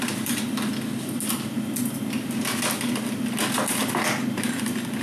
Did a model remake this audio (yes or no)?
no